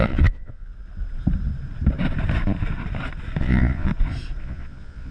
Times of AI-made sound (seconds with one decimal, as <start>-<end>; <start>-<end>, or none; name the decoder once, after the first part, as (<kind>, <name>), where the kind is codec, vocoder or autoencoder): 0.0-0.7 (vocoder, Vocos); 3.4-3.9; 4.4-5.1